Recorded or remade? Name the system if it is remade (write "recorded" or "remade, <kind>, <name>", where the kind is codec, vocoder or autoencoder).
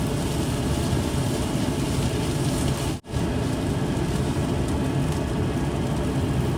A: recorded